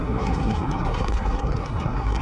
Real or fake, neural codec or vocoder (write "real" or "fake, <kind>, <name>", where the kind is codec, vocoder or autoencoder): fake, codec, SNAC